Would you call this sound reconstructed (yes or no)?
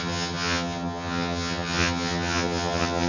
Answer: yes